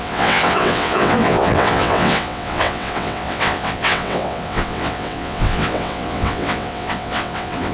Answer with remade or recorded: remade